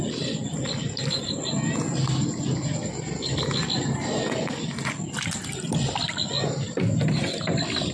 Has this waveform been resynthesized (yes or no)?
no